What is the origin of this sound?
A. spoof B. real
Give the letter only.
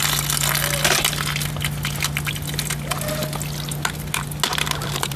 B